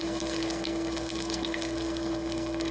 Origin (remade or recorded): remade